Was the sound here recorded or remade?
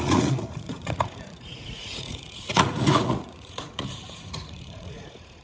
remade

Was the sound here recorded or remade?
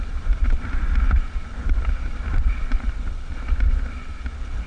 recorded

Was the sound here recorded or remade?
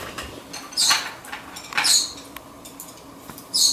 remade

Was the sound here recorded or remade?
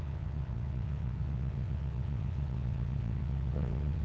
remade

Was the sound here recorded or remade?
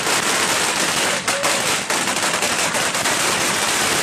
recorded